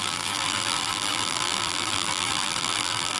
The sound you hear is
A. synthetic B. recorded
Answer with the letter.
A